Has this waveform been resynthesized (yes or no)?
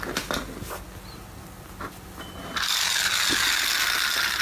no